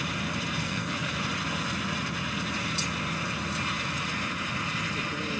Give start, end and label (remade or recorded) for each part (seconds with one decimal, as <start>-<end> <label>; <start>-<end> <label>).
0.0-0.6 recorded; 0.6-1.1 remade; 1.1-5.4 recorded